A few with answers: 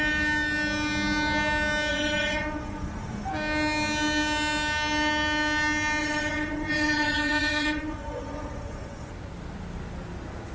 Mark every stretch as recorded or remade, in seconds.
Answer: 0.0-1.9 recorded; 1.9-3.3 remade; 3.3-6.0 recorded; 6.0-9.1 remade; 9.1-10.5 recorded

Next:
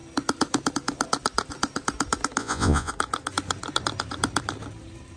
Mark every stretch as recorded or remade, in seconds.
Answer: 0.0-2.4 recorded; 2.4-2.9 remade; 2.9-5.2 recorded

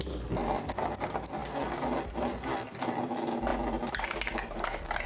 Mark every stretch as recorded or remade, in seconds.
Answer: 0.0-5.1 recorded

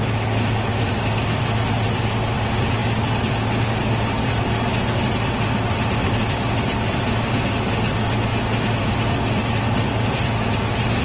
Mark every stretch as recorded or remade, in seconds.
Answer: 0.0-11.0 recorded

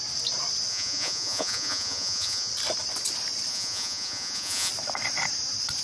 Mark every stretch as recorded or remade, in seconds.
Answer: 0.0-0.7 recorded; 0.7-2.5 remade; 2.5-3.5 recorded; 3.5-4.7 remade; 4.7-5.8 recorded